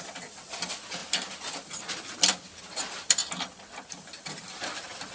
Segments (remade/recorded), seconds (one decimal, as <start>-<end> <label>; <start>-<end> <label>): 0.0-3.2 remade; 3.2-3.9 recorded; 3.9-5.1 remade